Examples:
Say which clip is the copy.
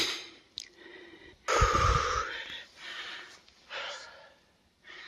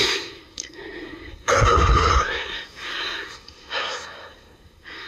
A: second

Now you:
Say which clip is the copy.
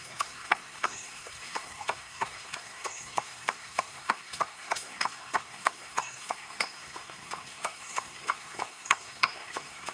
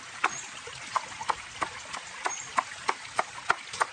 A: first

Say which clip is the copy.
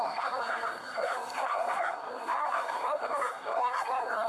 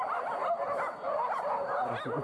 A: first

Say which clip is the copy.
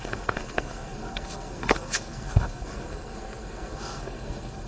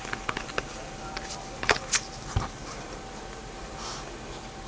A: first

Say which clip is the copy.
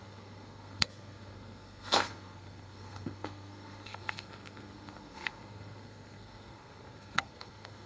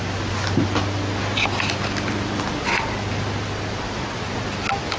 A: first